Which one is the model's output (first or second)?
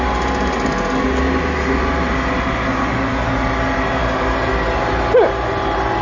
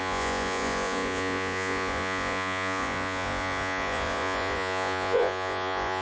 second